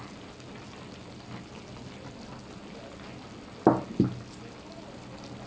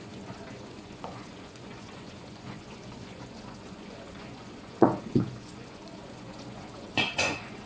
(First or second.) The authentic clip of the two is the first